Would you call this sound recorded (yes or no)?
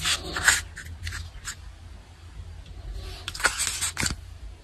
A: yes